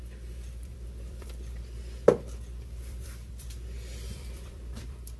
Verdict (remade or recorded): remade